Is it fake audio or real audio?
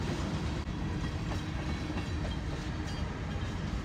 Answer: real